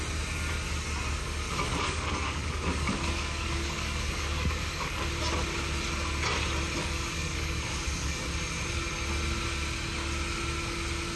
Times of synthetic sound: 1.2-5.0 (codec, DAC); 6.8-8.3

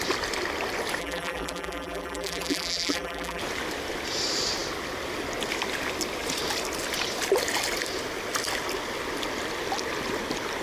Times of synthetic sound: 1.0-3.4 (vocoder, BigVGAN v2)

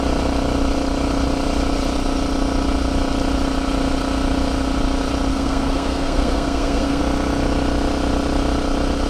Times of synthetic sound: 5.3-7.0 (codec, SNAC)

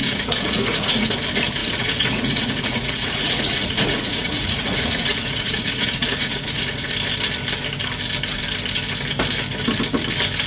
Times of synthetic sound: 0.0-1.1 (vocoder, Vocos); 1.6-6.9

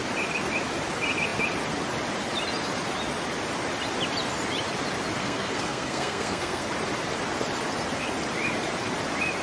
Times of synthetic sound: 5.2-6.7 (codec, SNAC)